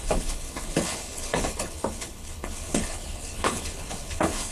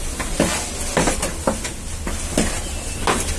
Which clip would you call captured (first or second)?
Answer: second